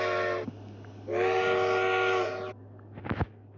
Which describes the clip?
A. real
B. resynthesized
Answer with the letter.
A